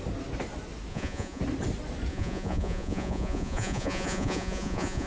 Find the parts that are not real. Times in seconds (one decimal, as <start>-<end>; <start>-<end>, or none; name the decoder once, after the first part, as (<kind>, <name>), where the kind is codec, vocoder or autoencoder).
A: 0.9-1.4 (vocoder, Vocos); 2.1-5.1